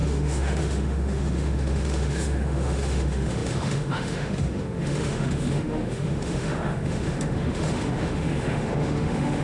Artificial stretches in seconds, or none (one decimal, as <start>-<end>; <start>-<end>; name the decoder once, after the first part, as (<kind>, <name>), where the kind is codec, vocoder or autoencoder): 0.0-9.4 (autoencoder, DAC-VAE)